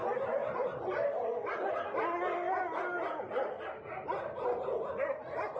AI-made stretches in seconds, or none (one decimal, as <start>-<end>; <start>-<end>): none